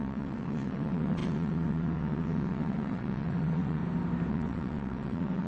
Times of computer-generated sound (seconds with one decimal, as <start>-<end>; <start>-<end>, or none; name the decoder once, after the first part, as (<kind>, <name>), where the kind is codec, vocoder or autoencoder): 0.0-3.8 (vocoder, WaveNeXt); 4.3-5.5